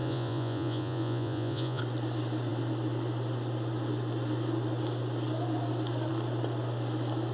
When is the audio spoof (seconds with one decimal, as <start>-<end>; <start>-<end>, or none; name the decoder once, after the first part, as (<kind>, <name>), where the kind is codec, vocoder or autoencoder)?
0.0-1.8 (vocoder, Vocos)